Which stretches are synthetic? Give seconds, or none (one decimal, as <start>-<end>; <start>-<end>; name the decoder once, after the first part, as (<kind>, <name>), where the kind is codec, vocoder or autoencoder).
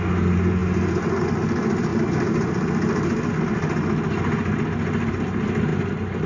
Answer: none